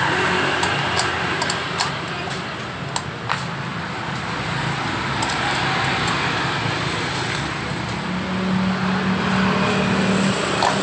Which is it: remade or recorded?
recorded